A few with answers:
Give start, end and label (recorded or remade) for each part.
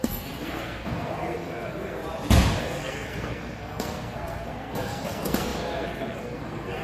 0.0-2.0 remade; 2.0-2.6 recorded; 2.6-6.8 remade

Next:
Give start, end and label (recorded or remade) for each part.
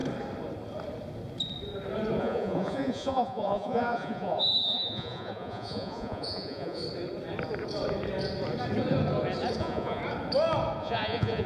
0.0-2.2 recorded; 2.2-6.8 remade; 6.8-9.6 recorded; 9.6-10.0 remade; 10.0-10.8 recorded; 10.8-11.5 remade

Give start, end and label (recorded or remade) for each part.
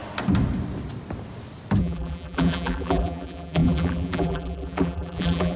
0.0-1.8 recorded; 1.8-5.6 remade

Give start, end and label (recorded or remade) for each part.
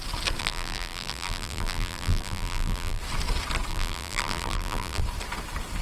0.0-0.4 recorded; 0.4-3.0 remade; 3.0-3.7 recorded; 3.7-5.0 remade; 5.0-5.8 recorded